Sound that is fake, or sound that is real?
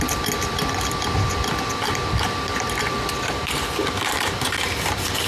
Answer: real